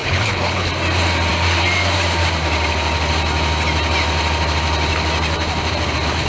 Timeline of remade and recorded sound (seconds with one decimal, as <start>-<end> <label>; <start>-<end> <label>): 0.0-0.7 remade; 0.7-6.3 recorded

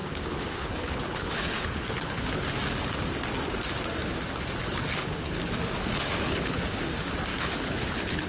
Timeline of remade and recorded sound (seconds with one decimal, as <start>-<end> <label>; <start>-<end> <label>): 0.0-2.4 remade; 2.4-4.6 recorded; 4.6-5.3 remade; 5.3-5.8 recorded; 5.8-6.8 remade; 6.8-7.3 recorded; 7.3-8.3 remade

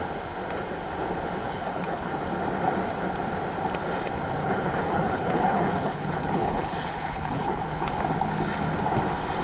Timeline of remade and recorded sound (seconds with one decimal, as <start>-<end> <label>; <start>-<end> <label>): 0.0-1.4 recorded; 1.4-2.1 remade; 2.1-4.4 recorded; 4.4-7.9 remade; 7.9-9.4 recorded

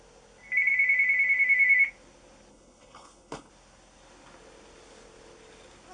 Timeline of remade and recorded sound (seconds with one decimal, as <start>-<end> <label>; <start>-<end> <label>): 0.0-2.5 recorded; 2.5-3.5 remade; 3.5-5.9 recorded